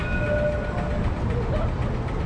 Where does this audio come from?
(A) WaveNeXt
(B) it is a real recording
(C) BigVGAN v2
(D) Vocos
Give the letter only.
B